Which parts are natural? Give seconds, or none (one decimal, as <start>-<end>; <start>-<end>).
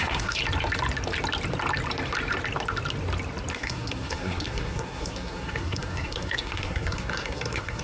0.4-3.5